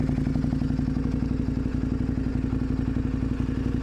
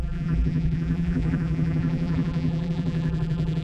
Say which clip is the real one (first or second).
first